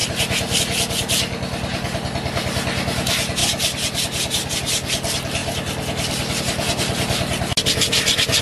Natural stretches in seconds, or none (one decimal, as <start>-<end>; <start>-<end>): 0.0-8.4